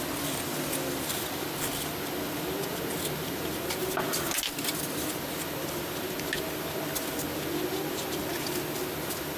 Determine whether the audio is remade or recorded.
recorded